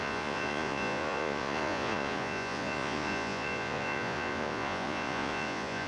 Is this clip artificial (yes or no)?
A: yes